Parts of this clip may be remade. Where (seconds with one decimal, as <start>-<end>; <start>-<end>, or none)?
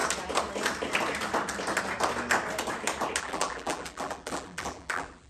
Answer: 3.2-5.3